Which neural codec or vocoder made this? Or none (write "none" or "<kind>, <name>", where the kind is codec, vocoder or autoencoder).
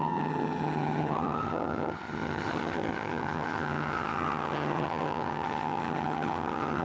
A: vocoder, HiFi-GAN